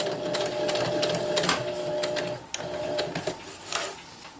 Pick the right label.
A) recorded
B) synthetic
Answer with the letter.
A